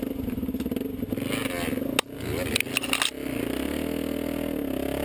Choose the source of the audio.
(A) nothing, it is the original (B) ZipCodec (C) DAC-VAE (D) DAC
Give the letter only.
A